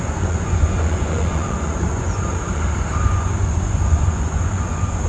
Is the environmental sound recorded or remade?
remade